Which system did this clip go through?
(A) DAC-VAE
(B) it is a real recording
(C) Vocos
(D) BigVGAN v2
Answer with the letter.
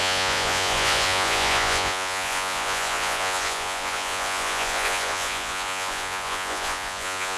C